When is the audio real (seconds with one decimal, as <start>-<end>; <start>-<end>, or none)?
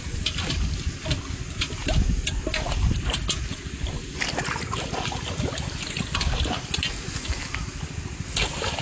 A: 0.0-8.8